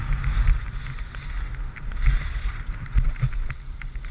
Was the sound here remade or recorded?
recorded